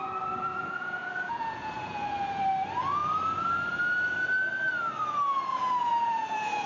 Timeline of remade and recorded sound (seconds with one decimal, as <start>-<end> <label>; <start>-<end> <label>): 0.0-0.5 recorded; 0.5-2.4 remade; 2.4-5.5 recorded; 5.5-6.7 remade